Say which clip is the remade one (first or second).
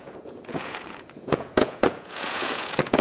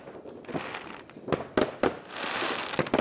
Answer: first